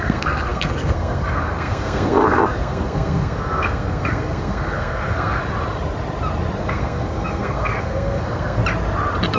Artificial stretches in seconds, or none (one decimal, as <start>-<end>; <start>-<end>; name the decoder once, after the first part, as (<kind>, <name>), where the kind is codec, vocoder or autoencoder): 0.0-5.4 (codec, SNAC); 6.6-8.6